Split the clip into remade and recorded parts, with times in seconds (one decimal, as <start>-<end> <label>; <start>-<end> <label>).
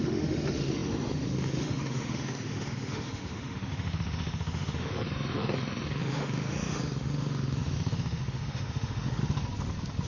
0.0-9.2 remade; 9.2-10.1 recorded